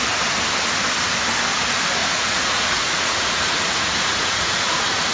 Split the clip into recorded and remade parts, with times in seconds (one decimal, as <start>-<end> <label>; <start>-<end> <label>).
0.0-2.0 recorded; 2.0-5.1 remade